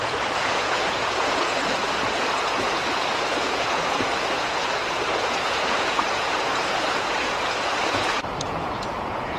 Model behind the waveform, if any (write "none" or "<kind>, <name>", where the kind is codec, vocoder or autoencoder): vocoder, Vocos